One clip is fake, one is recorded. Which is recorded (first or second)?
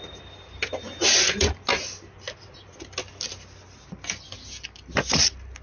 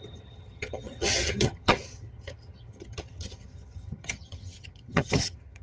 first